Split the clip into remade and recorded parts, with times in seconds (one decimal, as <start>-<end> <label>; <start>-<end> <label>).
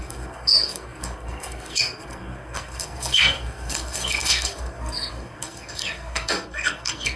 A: 0.0-7.2 remade